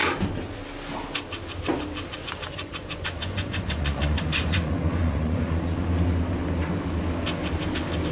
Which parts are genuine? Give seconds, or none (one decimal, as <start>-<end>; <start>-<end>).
0.0-2.2; 5.9-8.1